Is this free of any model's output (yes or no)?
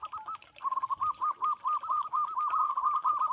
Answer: yes